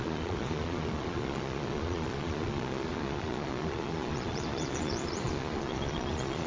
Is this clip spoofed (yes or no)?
yes